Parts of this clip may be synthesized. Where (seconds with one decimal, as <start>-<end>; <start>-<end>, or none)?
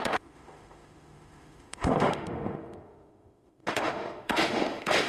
0.0-5.1